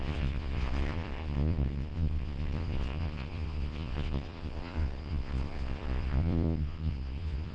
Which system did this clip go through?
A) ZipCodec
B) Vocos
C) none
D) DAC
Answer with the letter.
B